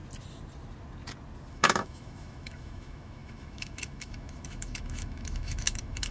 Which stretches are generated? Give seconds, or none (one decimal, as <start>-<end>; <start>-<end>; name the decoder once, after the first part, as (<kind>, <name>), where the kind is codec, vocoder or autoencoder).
1.5-6.1 (autoencoder, DAC-VAE)